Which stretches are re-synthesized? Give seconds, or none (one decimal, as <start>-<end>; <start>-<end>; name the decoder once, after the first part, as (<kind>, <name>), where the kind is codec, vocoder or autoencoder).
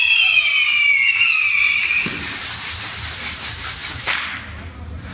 none